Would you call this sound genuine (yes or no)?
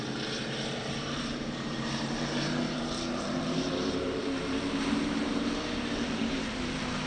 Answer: no